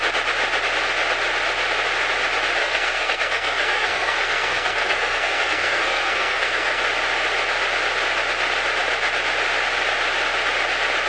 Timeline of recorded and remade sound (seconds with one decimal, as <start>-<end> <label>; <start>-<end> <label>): 0.0-2.6 recorded; 2.6-6.8 remade; 6.8-11.1 recorded